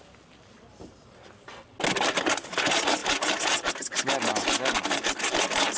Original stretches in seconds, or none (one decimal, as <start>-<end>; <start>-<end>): 0.0-5.8